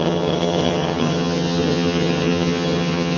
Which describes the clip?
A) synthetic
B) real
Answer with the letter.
A